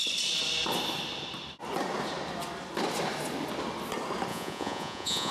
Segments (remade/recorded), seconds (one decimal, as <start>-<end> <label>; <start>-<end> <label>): 0.0-4.3 recorded; 4.3-5.3 remade

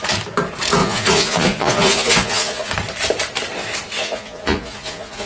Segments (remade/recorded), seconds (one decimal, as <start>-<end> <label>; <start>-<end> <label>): 0.0-0.8 recorded; 0.8-2.7 remade; 2.7-4.0 recorded; 4.0-5.3 remade

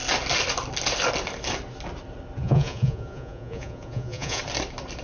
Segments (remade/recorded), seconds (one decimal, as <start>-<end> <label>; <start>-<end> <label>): 0.0-2.4 recorded; 2.4-4.4 remade; 4.4-5.0 recorded